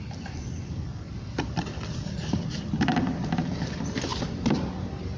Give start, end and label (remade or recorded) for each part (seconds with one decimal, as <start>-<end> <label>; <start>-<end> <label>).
0.0-4.1 remade; 4.1-5.2 recorded